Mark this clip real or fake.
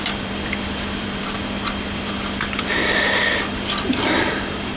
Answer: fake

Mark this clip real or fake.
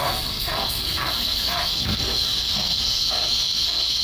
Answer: fake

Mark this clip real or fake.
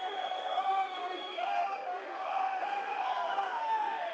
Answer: fake